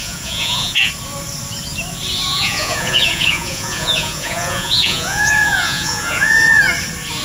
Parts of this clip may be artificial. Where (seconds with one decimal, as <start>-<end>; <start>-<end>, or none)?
0.0-0.9; 2.3-6.6